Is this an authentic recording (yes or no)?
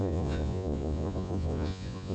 no